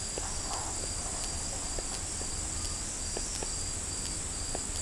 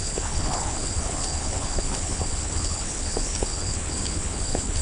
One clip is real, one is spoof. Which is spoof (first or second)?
second